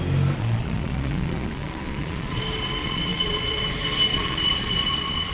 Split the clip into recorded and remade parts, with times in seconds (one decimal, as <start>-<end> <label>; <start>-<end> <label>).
0.0-0.4 recorded; 0.4-2.4 remade; 2.4-2.8 recorded; 2.8-3.6 remade; 3.6-4.1 recorded; 4.1-5.3 remade